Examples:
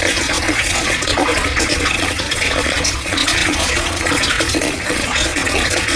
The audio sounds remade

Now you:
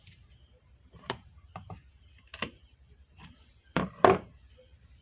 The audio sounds remade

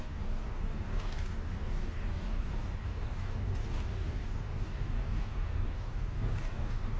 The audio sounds remade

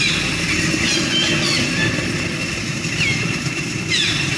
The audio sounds recorded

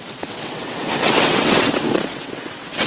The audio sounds remade